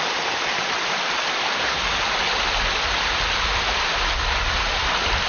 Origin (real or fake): real